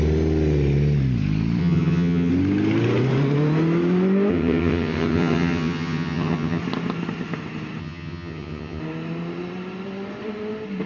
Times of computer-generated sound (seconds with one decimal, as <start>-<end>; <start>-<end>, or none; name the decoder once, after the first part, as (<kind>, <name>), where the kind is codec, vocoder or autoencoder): 1.6-2.3 (vocoder, HiFi-GAN); 4.3-6.6; 7.8-8.8